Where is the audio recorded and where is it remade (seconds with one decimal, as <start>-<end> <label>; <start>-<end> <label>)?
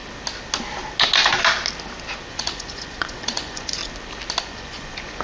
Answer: 0.0-2.3 recorded; 2.3-3.8 remade; 3.8-4.4 recorded; 4.4-5.2 remade